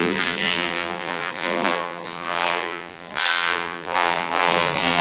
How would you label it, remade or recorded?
remade